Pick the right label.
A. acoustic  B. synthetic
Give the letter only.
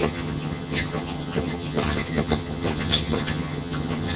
B